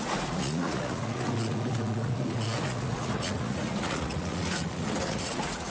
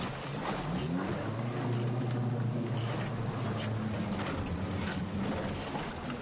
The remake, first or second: first